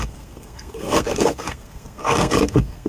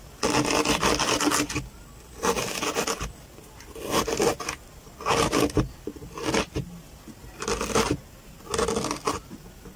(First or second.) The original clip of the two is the second